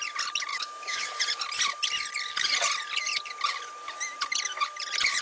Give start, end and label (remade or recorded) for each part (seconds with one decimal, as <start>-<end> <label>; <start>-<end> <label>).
0.0-0.5 recorded; 0.5-1.2 remade; 1.2-5.2 recorded